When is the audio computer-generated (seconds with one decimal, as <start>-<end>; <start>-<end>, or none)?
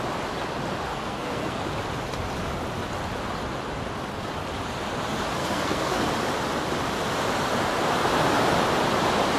0.9-1.6; 5.4-6.0